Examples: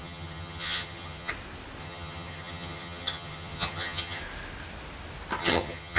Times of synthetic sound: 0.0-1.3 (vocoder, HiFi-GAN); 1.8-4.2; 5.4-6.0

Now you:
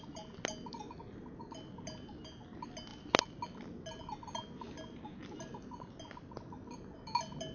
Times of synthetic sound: none

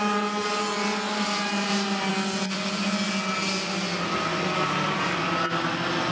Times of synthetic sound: none

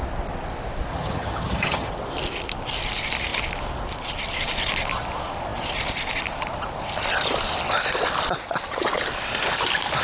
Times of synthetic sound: 0.9-1.9 (vocoder, HiFi-GAN)

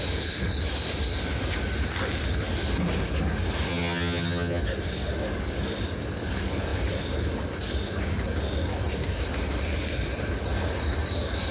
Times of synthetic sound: 3.7-4.6 (vocoder, HiFi-GAN)

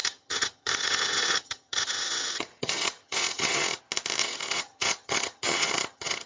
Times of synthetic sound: 0.0-3.8 (vocoder, HiFi-GAN); 4.2-6.3